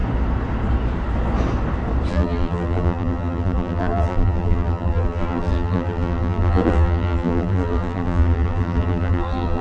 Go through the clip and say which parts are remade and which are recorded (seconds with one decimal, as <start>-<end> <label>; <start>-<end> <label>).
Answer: 0.0-2.1 recorded; 2.1-9.6 remade